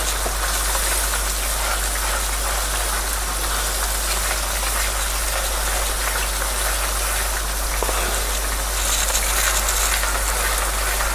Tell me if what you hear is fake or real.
real